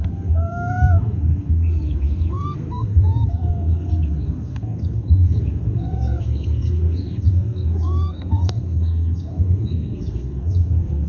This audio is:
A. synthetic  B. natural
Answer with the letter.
A